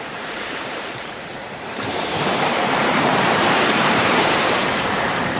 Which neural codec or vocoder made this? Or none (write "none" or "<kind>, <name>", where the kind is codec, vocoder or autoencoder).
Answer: vocoder, BigVGAN v2